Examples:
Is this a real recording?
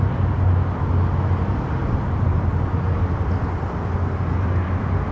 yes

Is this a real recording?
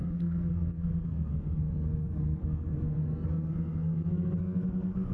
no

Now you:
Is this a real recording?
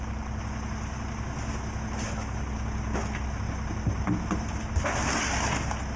yes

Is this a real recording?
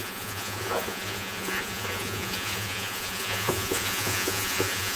no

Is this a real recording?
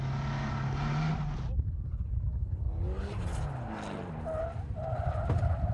yes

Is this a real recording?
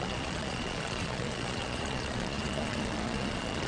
no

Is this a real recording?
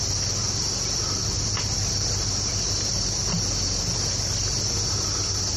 yes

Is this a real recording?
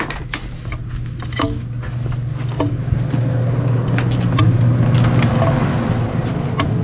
yes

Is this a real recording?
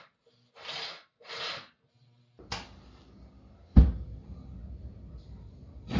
yes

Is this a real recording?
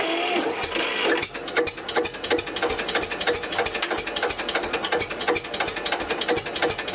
yes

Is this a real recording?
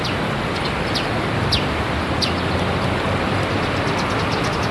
yes